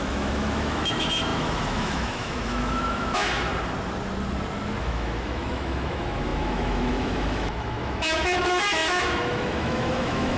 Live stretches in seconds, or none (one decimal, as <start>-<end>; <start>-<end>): 3.5-4.8